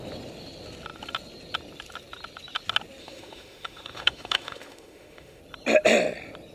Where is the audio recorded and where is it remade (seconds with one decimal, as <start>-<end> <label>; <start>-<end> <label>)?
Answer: 0.0-3.0 recorded; 3.0-5.4 remade; 5.4-6.5 recorded